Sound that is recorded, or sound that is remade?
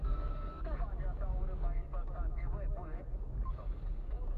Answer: remade